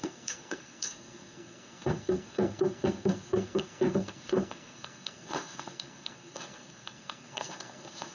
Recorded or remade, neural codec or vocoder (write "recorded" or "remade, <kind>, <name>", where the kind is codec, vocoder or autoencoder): remade, codec, SNAC